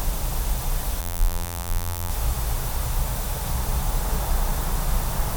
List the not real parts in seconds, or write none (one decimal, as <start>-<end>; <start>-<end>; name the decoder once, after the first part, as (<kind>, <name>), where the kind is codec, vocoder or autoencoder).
1.0-2.1 (vocoder, BigVGAN v2)